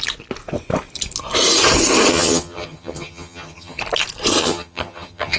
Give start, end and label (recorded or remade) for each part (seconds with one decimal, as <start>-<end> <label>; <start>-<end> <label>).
0.0-2.1 recorded; 2.1-3.8 remade; 3.8-4.4 recorded; 4.4-5.4 remade